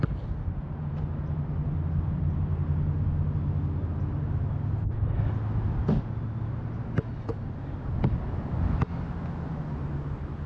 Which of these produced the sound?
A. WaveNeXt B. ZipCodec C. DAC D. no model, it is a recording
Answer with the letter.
D